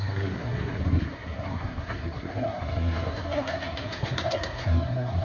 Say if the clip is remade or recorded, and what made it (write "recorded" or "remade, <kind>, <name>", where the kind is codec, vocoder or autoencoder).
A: remade, codec, SNAC